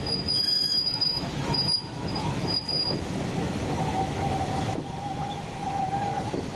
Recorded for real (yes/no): no